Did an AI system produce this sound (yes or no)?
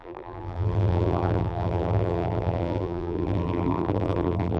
yes